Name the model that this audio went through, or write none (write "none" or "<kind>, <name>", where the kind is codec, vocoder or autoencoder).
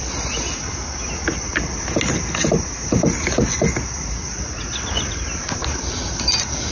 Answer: none